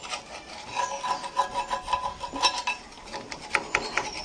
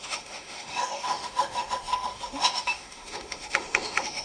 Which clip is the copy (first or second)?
second